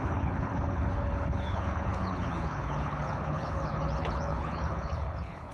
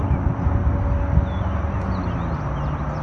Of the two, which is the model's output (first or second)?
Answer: first